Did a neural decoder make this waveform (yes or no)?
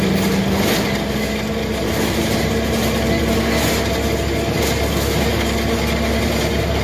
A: no